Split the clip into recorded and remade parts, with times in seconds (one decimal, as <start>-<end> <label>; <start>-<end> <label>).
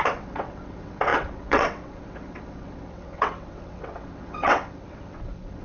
0.0-5.6 remade